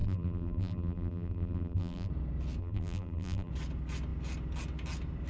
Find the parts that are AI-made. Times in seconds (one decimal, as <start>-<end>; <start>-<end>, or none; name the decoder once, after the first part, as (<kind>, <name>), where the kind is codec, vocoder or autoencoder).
0.0-2.1 (vocoder, BigVGAN v2); 2.6-3.5